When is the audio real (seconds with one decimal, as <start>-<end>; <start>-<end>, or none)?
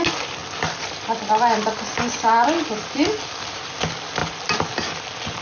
0.0-5.4